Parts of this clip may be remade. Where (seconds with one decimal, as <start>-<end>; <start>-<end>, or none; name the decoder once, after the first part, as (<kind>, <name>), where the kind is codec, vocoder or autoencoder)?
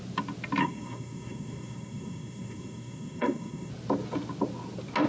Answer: 0.6-3.7 (codec, SNAC)